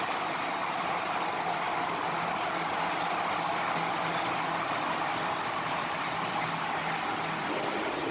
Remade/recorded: recorded